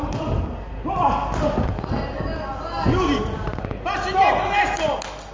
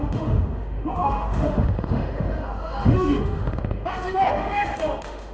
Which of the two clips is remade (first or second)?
second